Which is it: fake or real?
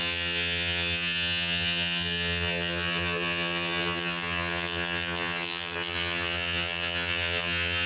fake